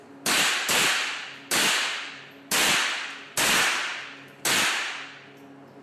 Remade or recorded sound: recorded